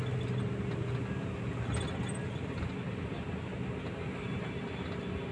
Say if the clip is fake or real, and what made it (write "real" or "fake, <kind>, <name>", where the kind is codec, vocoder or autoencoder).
real